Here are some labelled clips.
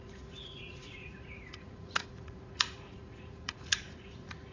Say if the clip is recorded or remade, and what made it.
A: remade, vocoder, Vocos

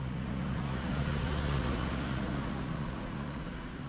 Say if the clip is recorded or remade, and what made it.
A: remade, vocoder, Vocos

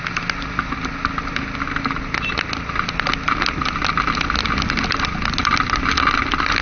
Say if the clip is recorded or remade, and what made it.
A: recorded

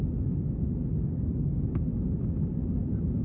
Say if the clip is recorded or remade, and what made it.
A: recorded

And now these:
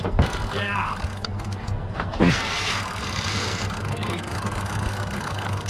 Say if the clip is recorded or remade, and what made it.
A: remade, codec, SNAC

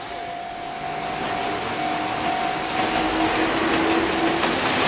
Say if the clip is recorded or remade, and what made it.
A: recorded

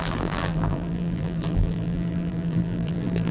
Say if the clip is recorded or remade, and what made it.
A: remade, vocoder, BigVGAN v2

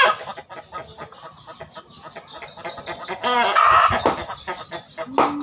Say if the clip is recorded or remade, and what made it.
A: recorded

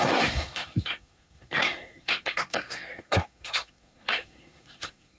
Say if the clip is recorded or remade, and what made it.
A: remade, codec, SNAC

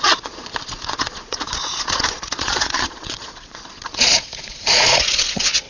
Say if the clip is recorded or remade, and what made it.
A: remade, vocoder, Vocos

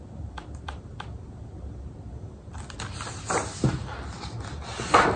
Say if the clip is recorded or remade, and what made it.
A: recorded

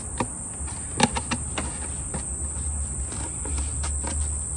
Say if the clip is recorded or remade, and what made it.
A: recorded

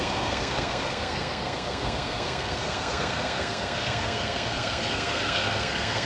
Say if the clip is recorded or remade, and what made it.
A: remade, codec, SNAC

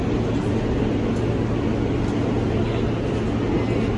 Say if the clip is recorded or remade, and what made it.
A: recorded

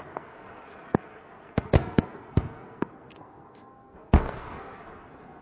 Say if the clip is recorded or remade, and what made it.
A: remade, codec, SNAC